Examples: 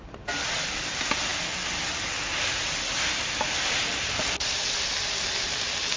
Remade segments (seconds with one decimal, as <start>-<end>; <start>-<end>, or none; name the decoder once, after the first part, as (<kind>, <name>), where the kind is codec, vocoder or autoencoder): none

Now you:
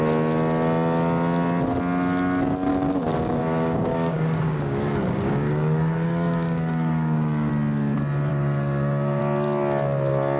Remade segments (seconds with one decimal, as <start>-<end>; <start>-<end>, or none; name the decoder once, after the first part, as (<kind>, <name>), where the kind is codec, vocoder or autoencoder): 2.7-7.5 (codec, DAC); 8.3-9.2

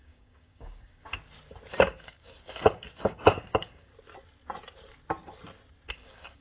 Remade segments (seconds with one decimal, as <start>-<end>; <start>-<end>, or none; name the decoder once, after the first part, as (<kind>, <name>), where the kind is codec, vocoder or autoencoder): 0.0-1.1 (codec, DAC); 1.7-3.9; 5.9-6.4

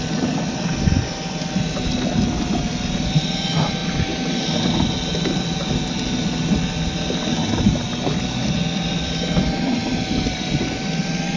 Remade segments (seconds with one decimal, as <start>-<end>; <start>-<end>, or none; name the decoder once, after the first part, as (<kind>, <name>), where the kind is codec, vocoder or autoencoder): none

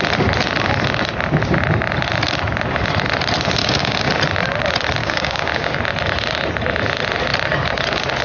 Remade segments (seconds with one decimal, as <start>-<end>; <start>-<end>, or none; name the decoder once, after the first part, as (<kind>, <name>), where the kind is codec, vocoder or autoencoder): 3.6-4.1 (codec, DAC); 5.0-5.8

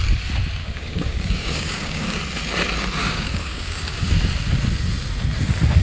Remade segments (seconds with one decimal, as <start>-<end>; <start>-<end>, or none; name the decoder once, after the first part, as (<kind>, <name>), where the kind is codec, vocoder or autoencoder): 0.6-2.2 (codec, DAC); 3.0-4.1